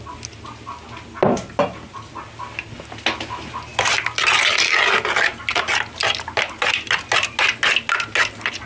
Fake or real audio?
real